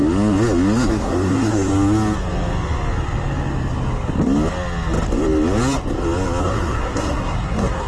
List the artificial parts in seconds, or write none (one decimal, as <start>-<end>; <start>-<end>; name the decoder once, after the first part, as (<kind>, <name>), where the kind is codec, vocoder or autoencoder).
0.9-1.7 (codec, SNAC); 6.4-7.9